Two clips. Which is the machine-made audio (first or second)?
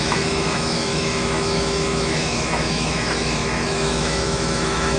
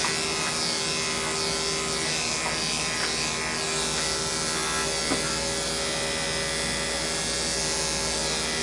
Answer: first